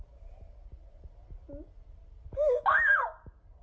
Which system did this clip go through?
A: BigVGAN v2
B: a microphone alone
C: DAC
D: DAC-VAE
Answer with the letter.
B